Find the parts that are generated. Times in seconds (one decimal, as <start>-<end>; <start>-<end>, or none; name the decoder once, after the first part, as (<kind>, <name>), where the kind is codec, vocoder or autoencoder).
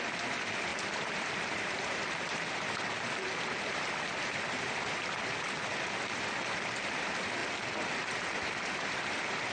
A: 0.0-7.4 (vocoder, BigVGAN v2); 8.2-9.5